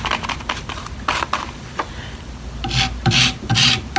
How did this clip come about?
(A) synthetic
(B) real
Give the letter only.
B